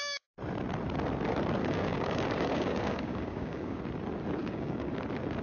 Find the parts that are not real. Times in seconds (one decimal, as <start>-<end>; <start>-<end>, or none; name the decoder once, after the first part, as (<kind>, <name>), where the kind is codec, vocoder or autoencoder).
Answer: 1.6-3.8 (codec, DAC); 4.4-4.9